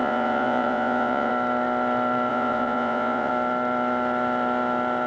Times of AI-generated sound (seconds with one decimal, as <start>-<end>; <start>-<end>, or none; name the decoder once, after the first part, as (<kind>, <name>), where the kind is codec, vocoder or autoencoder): 0.0-1.3 (vocoder, Vocos); 2.3-3.3